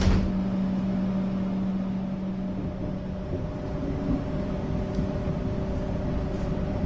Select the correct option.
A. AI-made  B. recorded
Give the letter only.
B